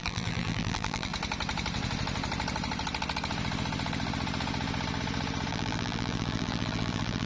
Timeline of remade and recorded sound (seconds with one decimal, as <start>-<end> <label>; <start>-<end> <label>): 0.0-1.1 remade; 1.1-5.5 recorded; 5.5-7.3 remade